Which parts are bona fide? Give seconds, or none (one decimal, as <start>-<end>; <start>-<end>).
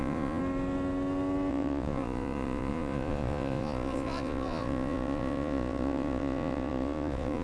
0.4-1.5